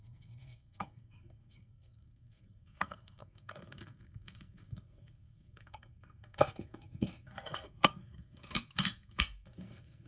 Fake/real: fake